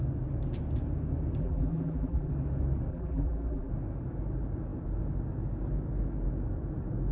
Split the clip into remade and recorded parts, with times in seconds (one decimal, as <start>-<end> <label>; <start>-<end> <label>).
0.0-1.4 recorded; 1.4-2.3 remade; 2.3-2.9 recorded; 2.9-3.7 remade; 3.7-7.1 recorded